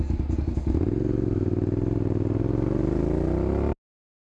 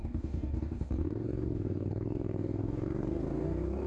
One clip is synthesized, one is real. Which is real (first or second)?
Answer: first